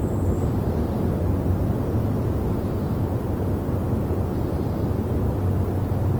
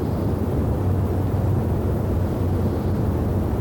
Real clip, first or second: first